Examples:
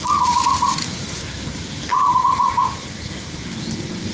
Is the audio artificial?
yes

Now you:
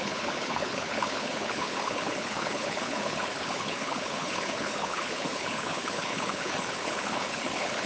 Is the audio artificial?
yes